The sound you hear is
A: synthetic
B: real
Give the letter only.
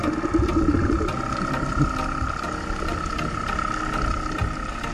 B